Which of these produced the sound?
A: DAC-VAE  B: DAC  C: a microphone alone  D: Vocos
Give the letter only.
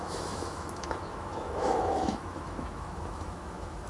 A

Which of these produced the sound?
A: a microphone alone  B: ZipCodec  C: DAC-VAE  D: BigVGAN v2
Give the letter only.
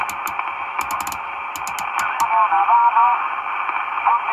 A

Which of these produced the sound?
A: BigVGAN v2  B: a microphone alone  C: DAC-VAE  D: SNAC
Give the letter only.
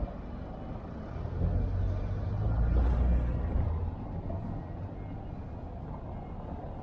B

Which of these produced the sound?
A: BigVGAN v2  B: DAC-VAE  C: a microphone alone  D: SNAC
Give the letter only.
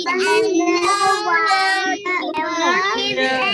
C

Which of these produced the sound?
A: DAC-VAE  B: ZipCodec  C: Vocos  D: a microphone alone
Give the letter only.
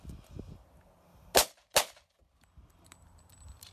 D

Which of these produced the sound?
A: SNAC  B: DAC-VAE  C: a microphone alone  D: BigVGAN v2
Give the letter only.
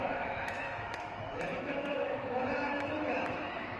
B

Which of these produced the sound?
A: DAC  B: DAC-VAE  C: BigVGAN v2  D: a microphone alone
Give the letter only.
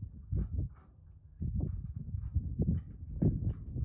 D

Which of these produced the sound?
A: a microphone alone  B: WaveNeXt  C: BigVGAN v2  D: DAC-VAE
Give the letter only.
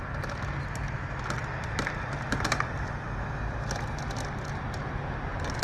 A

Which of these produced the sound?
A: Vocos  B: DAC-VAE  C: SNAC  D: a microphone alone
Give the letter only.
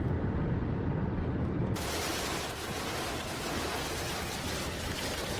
D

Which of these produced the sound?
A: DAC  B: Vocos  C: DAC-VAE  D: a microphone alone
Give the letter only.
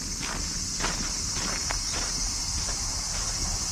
D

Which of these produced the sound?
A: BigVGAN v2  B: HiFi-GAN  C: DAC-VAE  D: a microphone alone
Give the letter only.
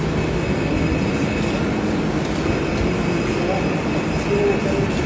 D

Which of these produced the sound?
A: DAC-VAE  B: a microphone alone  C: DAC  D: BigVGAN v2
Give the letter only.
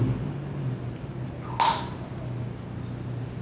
B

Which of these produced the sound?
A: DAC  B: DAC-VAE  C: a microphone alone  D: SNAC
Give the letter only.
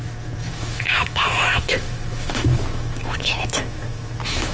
B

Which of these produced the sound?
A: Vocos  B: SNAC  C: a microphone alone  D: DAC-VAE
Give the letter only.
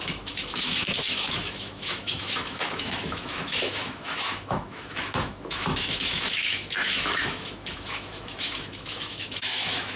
D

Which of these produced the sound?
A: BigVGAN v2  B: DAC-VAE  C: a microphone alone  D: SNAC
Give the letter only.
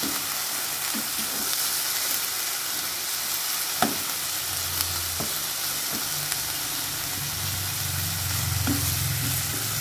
C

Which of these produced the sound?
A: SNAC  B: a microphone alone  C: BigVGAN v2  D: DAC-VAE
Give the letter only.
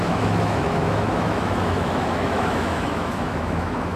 D